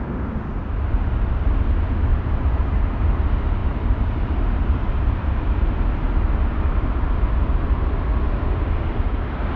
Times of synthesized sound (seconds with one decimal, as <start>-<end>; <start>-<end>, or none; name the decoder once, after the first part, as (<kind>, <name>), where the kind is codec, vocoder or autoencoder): 2.1-3.1 (vocoder, BigVGAN v2); 3.6-5.1